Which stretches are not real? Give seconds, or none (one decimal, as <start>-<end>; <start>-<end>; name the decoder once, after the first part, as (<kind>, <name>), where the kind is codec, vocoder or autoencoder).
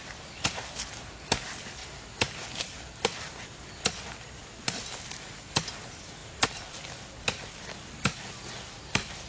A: none